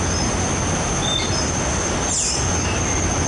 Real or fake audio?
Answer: real